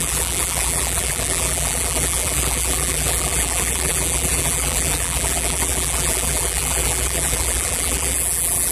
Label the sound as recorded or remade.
remade